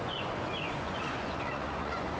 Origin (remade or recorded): remade